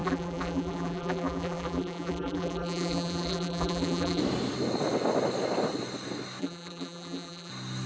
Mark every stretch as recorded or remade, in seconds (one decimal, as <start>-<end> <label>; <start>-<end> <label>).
0.0-4.2 remade; 4.2-6.4 recorded; 6.4-7.5 remade; 7.5-7.9 recorded